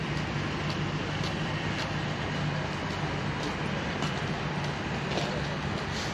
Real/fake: real